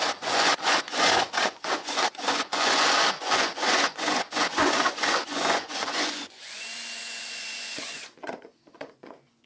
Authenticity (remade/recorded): remade